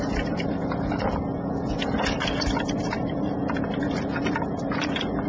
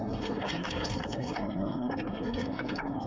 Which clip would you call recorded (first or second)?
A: first